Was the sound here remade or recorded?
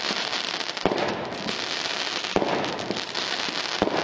recorded